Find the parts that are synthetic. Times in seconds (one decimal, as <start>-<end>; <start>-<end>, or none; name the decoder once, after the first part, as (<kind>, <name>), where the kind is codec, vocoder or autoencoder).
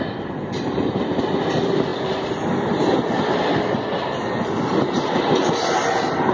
none